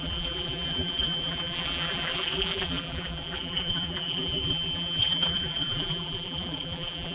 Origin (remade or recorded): remade